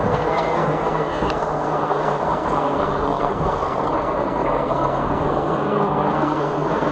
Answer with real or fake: fake